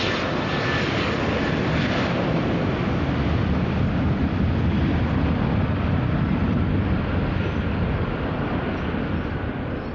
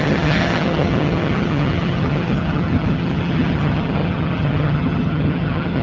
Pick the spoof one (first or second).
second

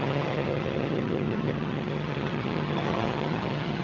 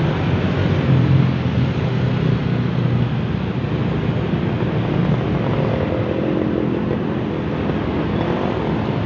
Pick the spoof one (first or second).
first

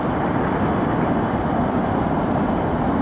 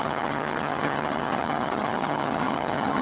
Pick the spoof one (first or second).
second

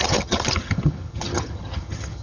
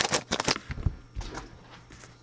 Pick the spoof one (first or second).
first